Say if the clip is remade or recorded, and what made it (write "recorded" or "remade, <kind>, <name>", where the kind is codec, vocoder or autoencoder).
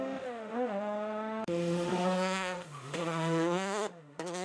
remade, autoencoder, DAC-VAE